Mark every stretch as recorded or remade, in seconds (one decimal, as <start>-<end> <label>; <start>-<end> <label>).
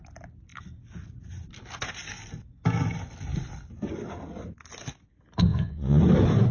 0.0-5.5 recorded; 5.5-6.0 remade; 6.0-6.5 recorded